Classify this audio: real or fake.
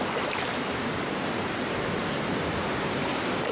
real